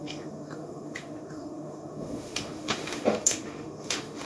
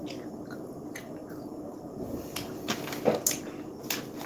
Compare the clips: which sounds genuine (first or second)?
second